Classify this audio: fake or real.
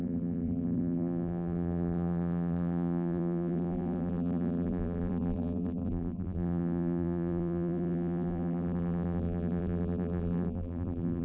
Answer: fake